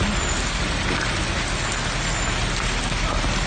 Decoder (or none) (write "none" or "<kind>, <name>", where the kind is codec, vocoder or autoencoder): none